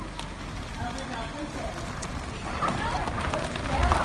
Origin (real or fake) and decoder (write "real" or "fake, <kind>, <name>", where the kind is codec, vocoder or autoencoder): real